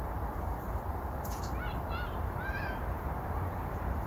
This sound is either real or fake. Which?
fake